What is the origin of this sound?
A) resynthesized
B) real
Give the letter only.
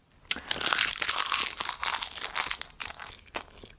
B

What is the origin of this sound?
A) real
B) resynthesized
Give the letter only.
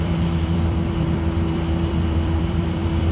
B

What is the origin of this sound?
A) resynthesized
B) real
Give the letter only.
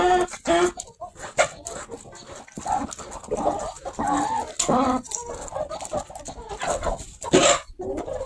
B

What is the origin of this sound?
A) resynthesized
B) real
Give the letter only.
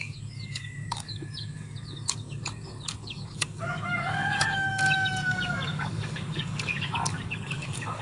A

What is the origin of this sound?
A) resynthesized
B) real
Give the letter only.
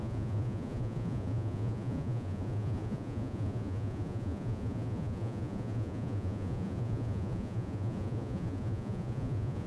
A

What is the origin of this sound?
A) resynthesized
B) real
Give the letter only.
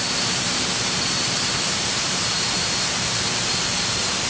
A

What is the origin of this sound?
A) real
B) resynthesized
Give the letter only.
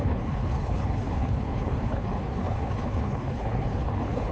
B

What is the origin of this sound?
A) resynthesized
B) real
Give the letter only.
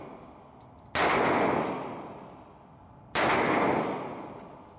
B